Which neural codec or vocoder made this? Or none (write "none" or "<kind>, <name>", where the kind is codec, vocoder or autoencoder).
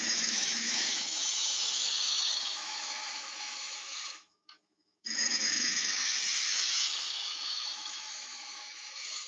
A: autoencoder, DAC-VAE